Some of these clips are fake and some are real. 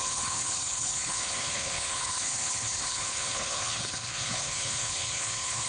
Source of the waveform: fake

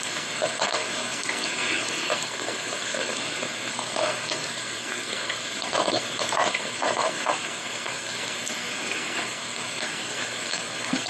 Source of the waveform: fake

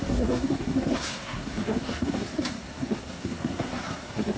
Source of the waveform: fake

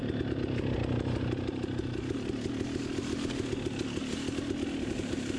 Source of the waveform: real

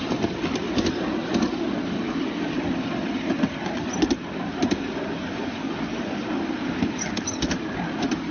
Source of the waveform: real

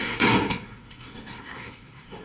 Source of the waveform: fake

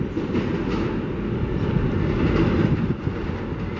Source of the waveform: real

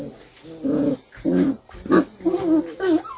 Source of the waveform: real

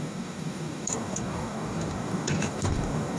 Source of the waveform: fake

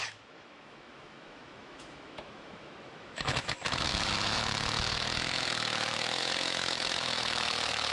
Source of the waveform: fake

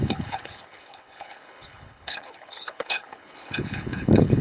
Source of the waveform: fake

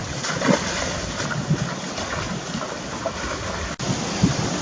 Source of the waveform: real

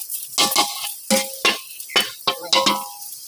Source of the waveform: real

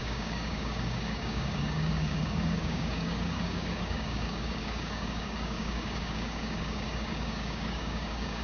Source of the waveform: fake